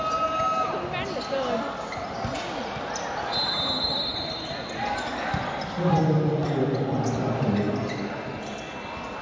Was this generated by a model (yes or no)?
no